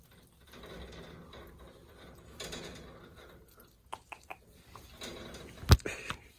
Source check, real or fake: real